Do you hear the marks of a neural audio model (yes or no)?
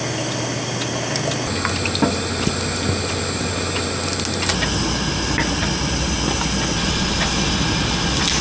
no